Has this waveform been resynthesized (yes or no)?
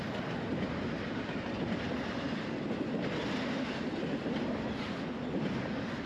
no